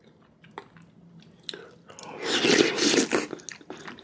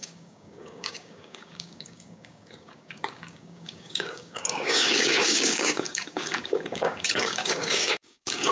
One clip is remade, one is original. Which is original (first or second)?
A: first